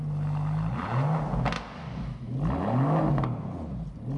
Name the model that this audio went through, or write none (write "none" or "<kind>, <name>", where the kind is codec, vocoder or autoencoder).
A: none